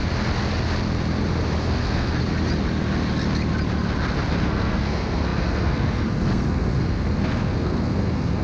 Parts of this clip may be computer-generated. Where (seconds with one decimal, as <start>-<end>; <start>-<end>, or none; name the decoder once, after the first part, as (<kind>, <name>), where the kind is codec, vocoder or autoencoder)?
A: 1.6-2.2 (codec, SNAC); 4.3-8.4